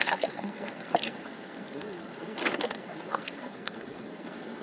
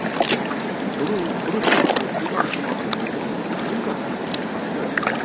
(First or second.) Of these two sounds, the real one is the second